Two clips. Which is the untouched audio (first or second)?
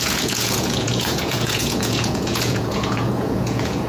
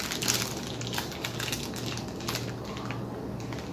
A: second